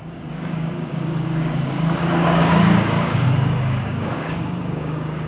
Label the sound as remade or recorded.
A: remade